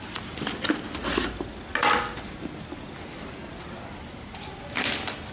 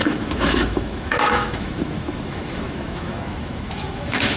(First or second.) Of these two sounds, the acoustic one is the first